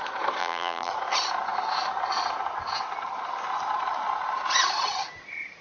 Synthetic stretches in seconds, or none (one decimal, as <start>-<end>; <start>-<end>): 0.4-0.9